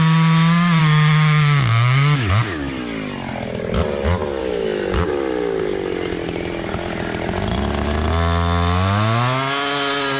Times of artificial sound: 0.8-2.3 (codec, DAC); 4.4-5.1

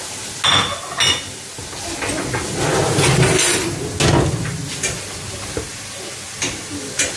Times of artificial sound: none

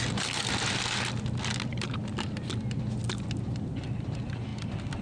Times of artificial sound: none

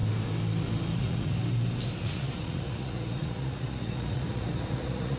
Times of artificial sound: 1.0-1.4 (vocoder, Vocos); 2.0-5.2

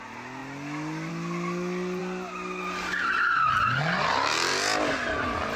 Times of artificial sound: none

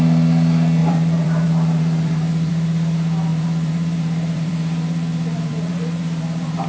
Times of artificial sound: 0.8-2.5 (vocoder, BigVGAN v2); 3.3-6.7

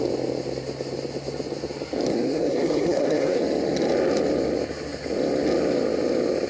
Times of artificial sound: 2.1-3.4 (codec, SNAC)